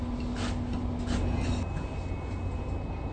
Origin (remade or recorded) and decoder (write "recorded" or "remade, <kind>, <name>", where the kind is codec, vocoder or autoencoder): recorded